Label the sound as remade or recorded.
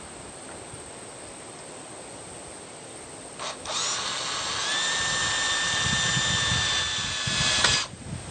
recorded